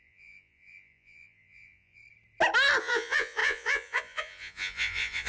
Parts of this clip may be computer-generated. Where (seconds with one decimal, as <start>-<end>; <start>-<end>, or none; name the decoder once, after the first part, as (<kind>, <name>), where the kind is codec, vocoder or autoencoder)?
0.0-2.0 (vocoder, Vocos); 2.8-5.3